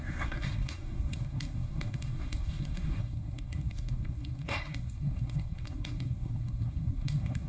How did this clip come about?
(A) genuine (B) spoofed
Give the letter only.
B